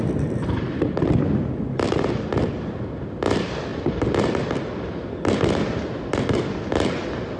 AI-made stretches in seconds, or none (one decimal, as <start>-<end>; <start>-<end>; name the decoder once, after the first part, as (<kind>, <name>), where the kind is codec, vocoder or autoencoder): none